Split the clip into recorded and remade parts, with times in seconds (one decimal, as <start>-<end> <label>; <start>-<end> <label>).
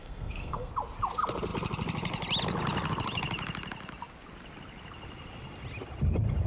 0.0-0.7 remade; 0.7-6.5 recorded